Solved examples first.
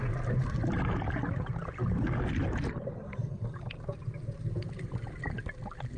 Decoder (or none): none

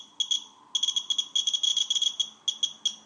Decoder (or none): none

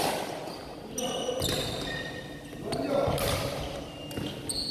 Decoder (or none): none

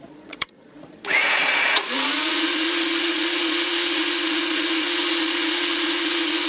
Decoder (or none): vocoder, Vocos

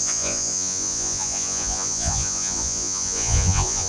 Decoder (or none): vocoder, Vocos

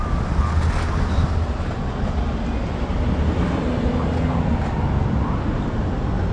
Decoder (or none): none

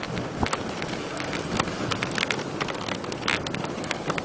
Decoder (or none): none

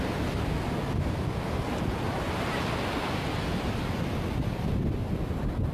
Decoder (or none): none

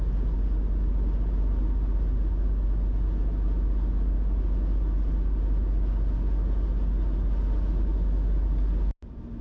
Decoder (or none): none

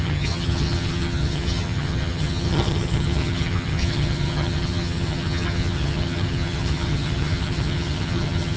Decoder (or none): vocoder, HiFi-GAN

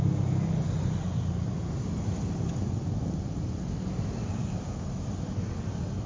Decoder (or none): none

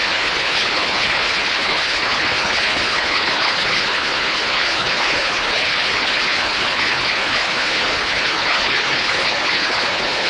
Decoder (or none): codec, HILCodec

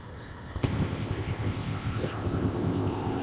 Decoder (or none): codec, ZipCodec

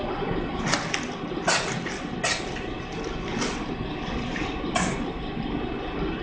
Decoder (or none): none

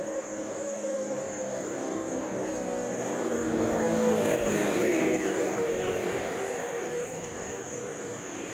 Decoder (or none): codec, DAC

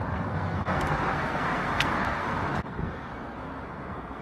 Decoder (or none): codec, SNAC